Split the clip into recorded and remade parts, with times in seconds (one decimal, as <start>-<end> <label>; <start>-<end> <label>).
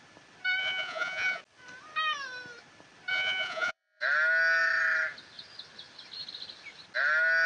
0.0-0.6 recorded; 0.6-1.4 remade; 1.4-3.1 recorded; 3.1-4.0 remade; 4.0-7.5 recorded